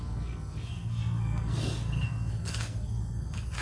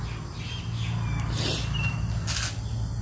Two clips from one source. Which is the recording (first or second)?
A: second